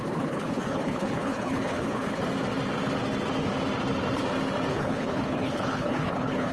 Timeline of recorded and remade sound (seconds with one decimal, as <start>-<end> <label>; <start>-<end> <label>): 0.0-2.2 remade; 2.2-4.7 recorded; 4.7-6.5 remade